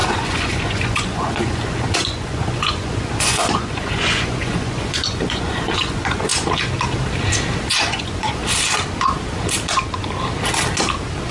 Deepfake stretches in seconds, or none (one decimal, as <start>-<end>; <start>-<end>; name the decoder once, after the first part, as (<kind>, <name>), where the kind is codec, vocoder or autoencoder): 0.0-6.3 (vocoder, Vocos); 7.7-8.4